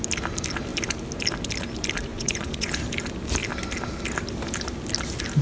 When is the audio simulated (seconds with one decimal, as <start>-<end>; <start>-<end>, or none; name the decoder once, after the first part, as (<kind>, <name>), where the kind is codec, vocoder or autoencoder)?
2.1-2.7 (vocoder, Vocos)